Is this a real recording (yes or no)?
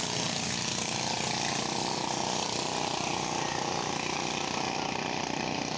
yes